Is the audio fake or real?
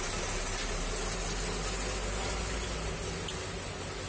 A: real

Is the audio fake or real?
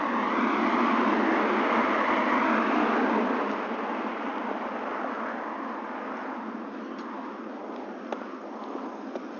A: real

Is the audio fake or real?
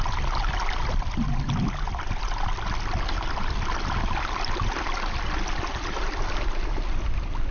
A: real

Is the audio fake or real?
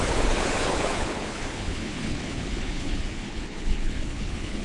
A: fake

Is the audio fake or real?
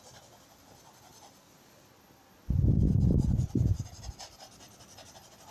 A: fake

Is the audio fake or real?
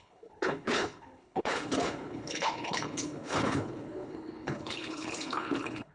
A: fake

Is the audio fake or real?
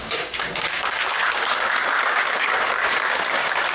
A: fake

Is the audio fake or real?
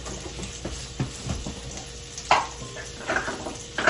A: real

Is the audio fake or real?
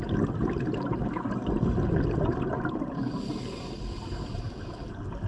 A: real